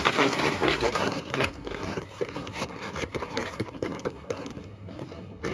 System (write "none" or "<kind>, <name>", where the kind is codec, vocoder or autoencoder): codec, SNAC